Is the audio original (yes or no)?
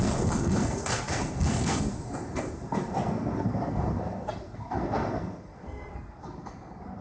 no